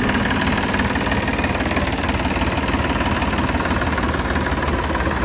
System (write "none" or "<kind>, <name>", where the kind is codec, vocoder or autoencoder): none